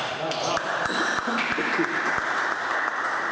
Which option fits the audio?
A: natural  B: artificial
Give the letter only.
A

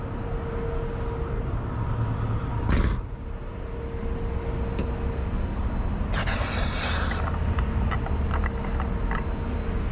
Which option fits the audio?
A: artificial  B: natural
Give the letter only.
B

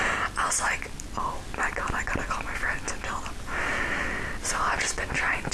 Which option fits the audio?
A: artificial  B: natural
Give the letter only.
B